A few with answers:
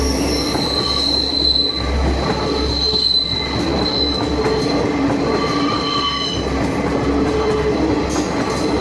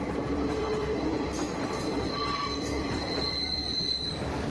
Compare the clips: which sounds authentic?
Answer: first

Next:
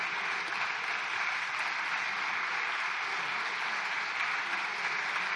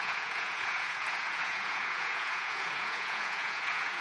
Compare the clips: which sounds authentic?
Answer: first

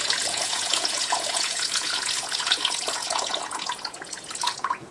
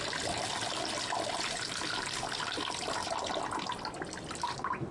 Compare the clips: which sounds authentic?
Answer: second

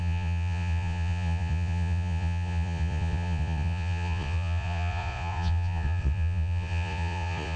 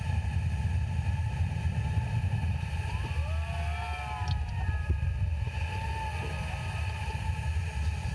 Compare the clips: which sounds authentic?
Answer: second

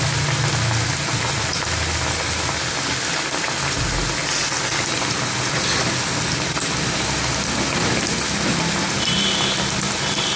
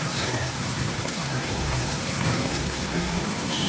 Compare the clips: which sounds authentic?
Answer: first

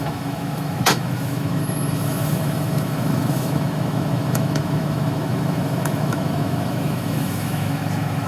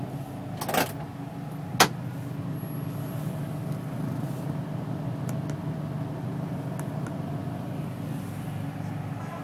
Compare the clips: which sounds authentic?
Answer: second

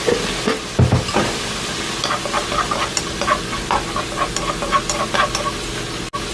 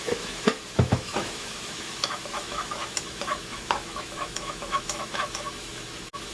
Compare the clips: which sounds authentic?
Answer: first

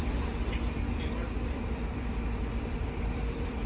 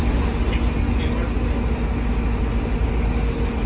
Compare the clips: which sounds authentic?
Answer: second